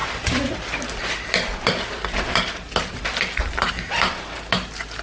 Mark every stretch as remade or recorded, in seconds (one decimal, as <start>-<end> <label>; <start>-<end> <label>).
0.0-5.0 recorded

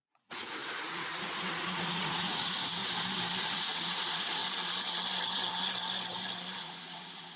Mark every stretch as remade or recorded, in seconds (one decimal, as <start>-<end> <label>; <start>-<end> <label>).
0.0-2.8 remade; 2.8-3.4 recorded; 3.4-4.4 remade; 4.4-6.6 recorded; 6.6-7.4 remade

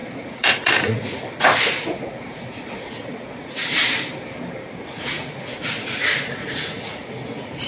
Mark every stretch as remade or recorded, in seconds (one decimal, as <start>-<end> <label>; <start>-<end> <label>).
0.0-3.6 remade; 3.6-4.8 recorded; 4.8-7.7 remade

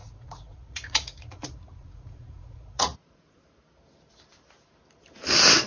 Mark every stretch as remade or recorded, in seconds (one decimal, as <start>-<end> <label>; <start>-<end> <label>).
0.0-3.4 remade; 3.4-5.7 recorded

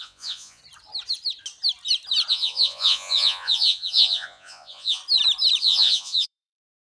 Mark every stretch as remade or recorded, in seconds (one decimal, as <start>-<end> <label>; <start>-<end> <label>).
0.0-0.6 remade; 0.6-2.3 recorded; 2.3-5.0 remade; 5.0-5.6 recorded; 5.6-6.8 remade